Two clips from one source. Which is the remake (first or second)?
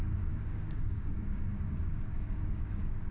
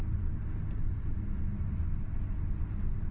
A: first